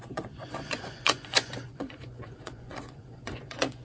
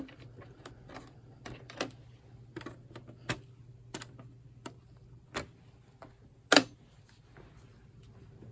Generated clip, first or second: first